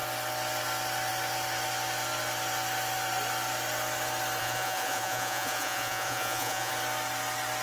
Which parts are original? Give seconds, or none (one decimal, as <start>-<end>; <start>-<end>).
0.0-4.4; 6.7-7.6